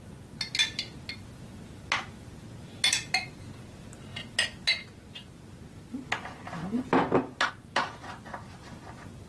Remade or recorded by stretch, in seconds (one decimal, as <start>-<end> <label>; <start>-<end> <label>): 0.0-9.3 recorded